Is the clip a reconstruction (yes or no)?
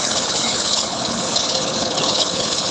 yes